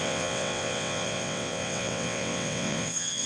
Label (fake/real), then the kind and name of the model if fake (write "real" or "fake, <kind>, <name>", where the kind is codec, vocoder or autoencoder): fake, vocoder, WaveNeXt